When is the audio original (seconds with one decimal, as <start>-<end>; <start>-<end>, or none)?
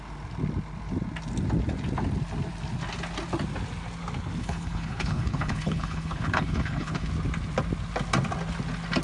0.0-4.4; 7.1-9.0